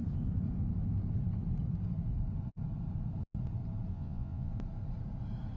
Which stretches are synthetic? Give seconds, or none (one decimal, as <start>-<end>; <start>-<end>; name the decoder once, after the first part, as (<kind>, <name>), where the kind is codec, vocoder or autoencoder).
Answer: 3.9-4.5 (vocoder, Vocos)